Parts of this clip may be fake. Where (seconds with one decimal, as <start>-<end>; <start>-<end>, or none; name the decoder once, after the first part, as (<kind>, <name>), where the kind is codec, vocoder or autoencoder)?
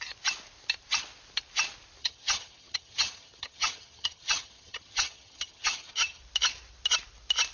2.0-6.2 (vocoder, HiFi-GAN)